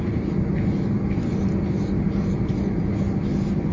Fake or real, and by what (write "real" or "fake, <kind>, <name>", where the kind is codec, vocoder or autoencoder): real